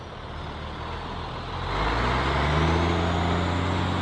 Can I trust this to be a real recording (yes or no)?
yes